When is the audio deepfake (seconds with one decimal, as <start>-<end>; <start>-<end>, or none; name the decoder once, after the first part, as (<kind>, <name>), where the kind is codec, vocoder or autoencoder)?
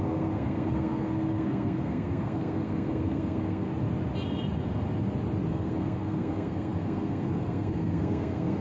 0.0-3.7 (codec, SNAC); 5.5-8.6